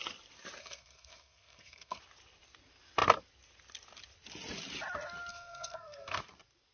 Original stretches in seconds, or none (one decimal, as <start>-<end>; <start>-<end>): 0.0-0.6; 2.0-5.3; 6.2-6.7